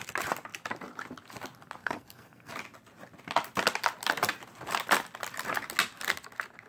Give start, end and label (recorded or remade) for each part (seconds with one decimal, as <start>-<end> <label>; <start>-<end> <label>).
0.0-1.8 recorded; 1.8-2.5 remade; 2.5-6.7 recorded